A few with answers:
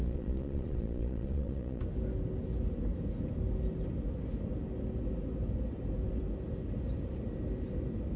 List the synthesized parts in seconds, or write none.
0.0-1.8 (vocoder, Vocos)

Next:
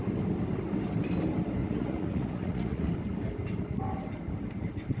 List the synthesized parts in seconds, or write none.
1.6-2.9 (vocoder, Vocos)

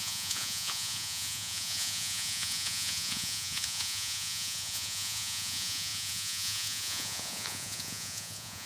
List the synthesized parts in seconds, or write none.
0.0-8.7 (vocoder, Vocos)

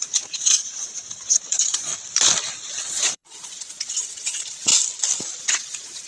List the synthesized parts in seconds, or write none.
0.0-1.9 (vocoder, Vocos); 2.9-4.7; 5.4-6.1